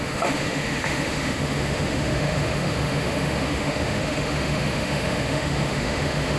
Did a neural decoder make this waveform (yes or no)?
yes